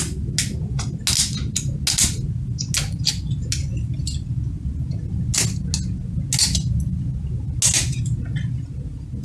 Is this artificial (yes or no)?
no